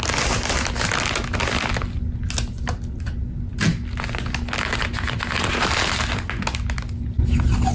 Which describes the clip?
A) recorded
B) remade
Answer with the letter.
A